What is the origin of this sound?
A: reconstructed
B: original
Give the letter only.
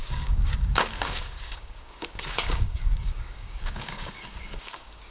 A